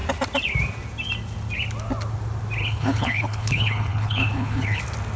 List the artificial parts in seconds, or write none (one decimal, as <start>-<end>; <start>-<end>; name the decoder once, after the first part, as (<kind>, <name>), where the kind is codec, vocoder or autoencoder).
2.6-4.8 (codec, HILCodec)